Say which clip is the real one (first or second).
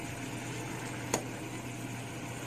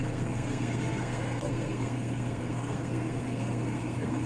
first